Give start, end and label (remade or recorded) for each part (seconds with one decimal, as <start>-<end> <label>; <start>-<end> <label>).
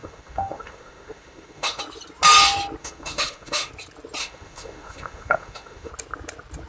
0.0-1.8 remade; 1.8-2.8 recorded; 2.8-3.7 remade; 3.7-4.2 recorded; 4.2-5.9 remade; 5.9-6.7 recorded